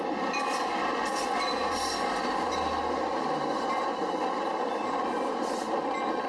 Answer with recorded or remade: remade